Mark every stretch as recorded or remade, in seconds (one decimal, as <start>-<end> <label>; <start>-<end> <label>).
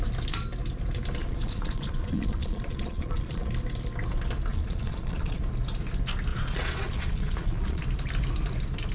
0.0-1.2 recorded; 1.2-3.5 remade; 3.5-4.5 recorded; 4.5-5.4 remade; 5.4-6.3 recorded; 6.3-7.8 remade; 7.8-8.9 recorded